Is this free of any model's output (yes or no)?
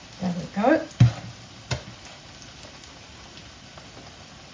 yes